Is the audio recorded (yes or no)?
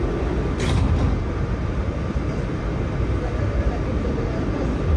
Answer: yes